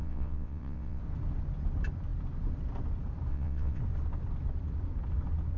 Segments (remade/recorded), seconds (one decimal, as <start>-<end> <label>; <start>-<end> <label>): 0.0-1.0 remade; 1.0-3.3 recorded; 3.3-3.8 remade; 3.8-5.6 recorded

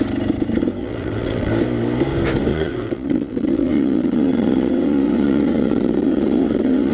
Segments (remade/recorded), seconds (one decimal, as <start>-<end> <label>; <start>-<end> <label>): 0.0-0.8 recorded; 0.8-1.5 remade; 1.5-2.5 recorded; 2.5-6.9 remade